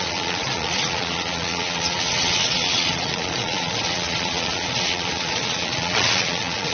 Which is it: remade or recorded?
remade